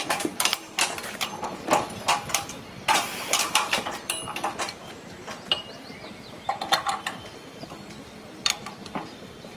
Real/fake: fake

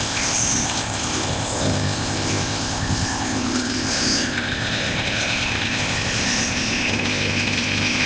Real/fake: fake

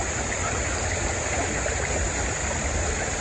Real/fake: real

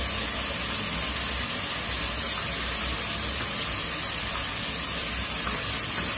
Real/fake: real